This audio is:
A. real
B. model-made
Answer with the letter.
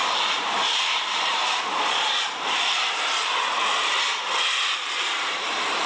B